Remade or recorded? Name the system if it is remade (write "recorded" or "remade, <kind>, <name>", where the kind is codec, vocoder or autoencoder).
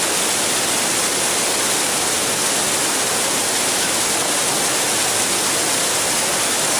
recorded